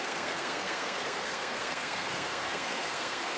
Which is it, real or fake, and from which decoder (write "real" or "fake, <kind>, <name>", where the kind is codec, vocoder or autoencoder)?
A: fake, codec, SNAC